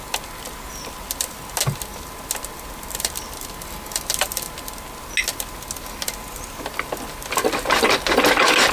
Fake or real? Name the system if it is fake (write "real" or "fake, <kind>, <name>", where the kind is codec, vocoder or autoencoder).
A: real